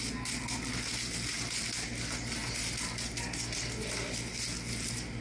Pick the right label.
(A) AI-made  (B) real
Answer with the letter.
B